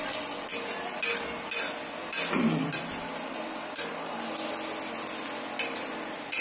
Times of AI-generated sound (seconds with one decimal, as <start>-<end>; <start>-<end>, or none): none